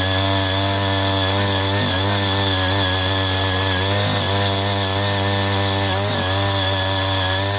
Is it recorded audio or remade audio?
recorded